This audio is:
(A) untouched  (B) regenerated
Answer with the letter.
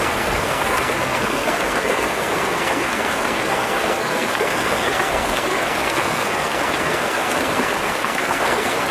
B